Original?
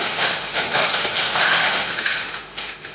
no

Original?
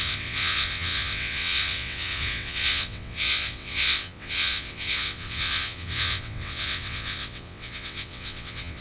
no